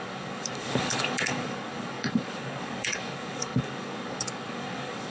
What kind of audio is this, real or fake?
fake